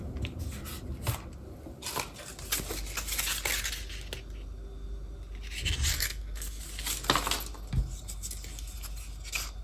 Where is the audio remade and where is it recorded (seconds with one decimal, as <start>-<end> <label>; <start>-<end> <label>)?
0.0-5.9 recorded; 5.9-6.6 remade; 6.6-9.6 recorded